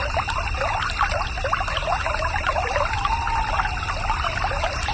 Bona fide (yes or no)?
yes